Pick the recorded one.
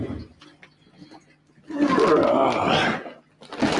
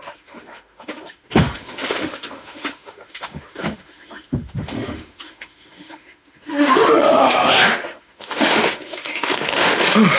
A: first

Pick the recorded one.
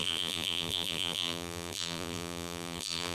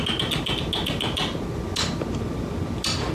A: second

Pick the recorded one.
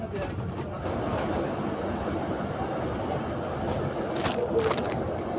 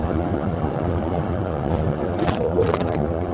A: first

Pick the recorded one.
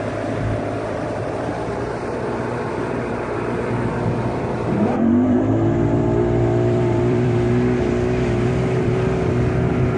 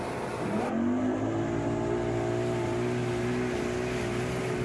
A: second